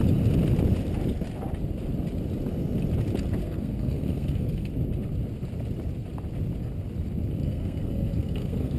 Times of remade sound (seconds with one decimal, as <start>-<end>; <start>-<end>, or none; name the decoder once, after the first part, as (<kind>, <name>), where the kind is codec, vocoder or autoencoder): 3.4-4.7 (codec, SNAC); 7.4-8.8